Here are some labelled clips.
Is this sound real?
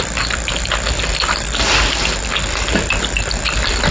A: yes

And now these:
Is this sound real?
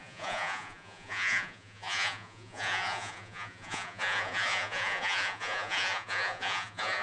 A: no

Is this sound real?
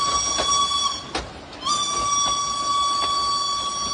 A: yes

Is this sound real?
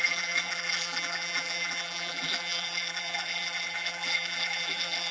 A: no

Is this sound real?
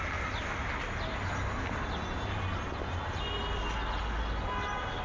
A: yes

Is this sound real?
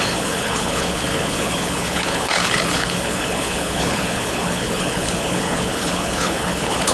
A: no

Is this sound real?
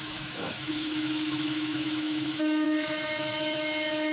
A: no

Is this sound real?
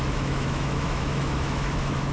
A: no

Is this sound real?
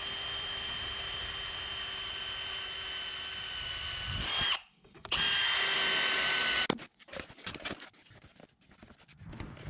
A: yes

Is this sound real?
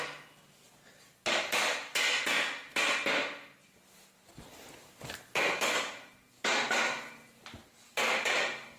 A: yes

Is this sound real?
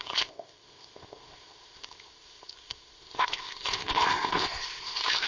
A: no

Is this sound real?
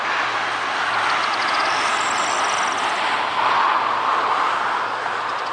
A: yes